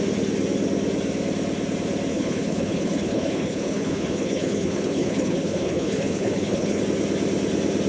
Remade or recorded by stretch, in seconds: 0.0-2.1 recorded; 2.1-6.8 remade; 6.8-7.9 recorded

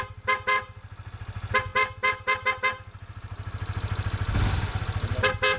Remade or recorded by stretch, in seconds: 0.0-5.6 recorded

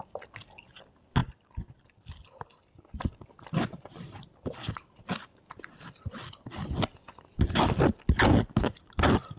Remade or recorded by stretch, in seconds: 0.0-9.4 recorded

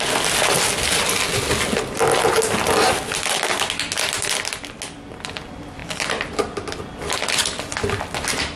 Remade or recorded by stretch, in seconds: 0.0-8.6 recorded

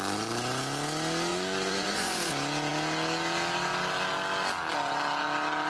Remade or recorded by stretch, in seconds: 0.0-1.3 recorded; 1.3-2.3 remade; 2.3-5.7 recorded